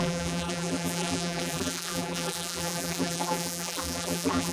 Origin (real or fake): fake